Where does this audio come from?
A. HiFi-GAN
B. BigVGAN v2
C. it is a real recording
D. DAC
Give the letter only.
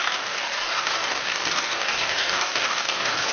D